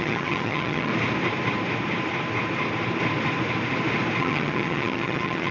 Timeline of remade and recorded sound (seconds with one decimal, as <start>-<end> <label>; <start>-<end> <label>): 0.0-0.9 remade; 0.9-4.2 recorded; 4.2-5.5 remade